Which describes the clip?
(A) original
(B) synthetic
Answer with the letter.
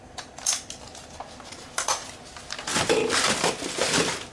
A